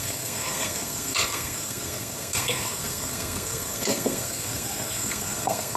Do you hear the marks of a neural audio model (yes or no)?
yes